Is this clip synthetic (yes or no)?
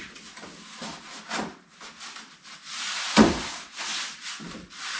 no